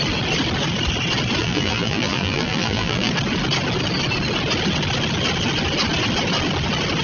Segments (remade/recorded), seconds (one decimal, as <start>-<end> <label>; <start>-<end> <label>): 0.0-1.4 recorded; 1.4-3.1 remade; 3.1-7.0 recorded